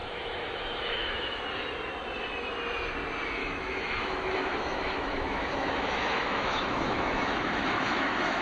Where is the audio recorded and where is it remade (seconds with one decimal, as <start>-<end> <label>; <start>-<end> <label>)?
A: 0.0-1.4 remade; 1.4-3.4 recorded; 3.4-8.4 remade